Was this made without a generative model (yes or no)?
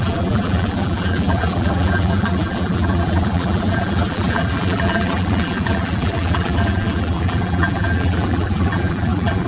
no